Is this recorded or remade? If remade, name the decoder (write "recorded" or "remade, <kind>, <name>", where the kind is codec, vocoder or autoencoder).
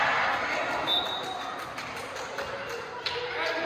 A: recorded